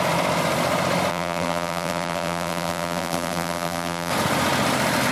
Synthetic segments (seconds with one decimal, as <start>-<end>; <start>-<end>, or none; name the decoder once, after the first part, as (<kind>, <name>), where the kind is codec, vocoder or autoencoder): 1.1-4.1 (vocoder, BigVGAN v2)